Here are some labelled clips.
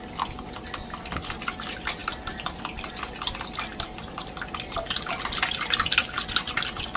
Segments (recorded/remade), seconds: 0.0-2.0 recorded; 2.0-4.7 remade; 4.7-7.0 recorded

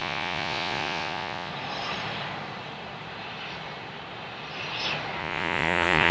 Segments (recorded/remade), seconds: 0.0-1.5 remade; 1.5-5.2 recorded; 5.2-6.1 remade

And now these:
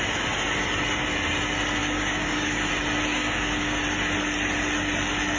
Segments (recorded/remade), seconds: 0.0-1.8 recorded; 1.8-2.7 remade; 2.7-3.1 recorded; 3.1-3.8 remade; 3.8-5.4 recorded

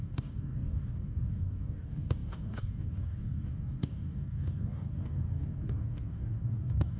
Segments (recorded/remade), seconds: 0.0-7.0 remade

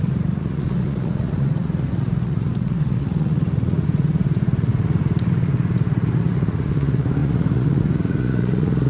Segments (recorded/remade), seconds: 0.0-8.9 remade

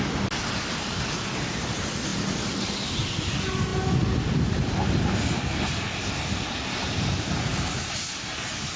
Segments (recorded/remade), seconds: 0.0-8.8 recorded

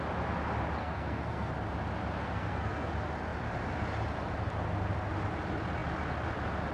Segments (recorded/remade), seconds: 0.0-0.8 recorded; 0.8-1.5 remade; 1.5-2.2 recorded; 2.2-2.9 remade; 2.9-6.7 recorded